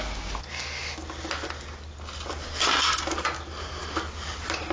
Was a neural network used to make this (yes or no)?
no